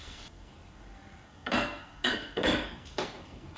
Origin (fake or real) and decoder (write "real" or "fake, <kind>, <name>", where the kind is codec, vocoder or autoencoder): fake, codec, SNAC